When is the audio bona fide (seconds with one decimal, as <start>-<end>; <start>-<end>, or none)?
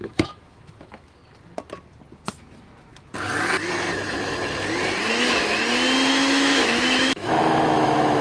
1.2-6.1